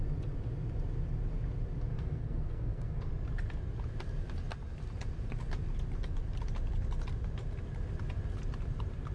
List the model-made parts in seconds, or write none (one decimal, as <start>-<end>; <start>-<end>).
1.9-3.1